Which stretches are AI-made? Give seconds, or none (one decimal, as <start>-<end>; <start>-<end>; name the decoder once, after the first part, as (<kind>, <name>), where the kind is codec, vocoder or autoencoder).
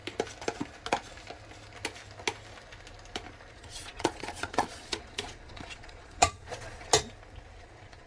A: 3.5-6.9 (vocoder, Vocos); 7.6-8.1